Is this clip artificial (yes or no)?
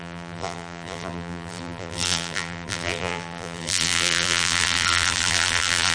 yes